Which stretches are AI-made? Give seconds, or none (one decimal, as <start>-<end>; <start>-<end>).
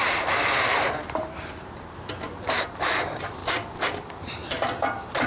0.0-3.4; 4.0-5.3